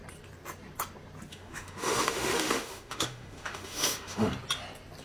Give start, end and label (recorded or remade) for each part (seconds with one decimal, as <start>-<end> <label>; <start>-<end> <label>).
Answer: 0.0-1.3 recorded; 1.3-4.3 remade; 4.3-5.0 recorded